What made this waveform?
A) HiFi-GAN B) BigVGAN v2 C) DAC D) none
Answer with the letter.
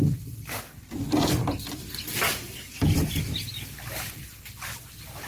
B